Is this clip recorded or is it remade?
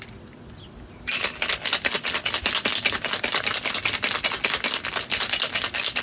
recorded